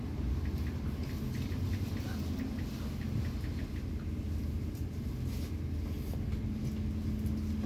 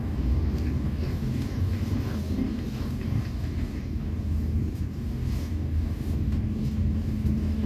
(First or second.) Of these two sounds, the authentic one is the first